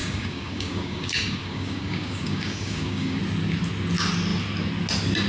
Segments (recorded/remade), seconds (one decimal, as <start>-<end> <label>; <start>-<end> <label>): 0.0-3.2 remade; 3.2-5.3 recorded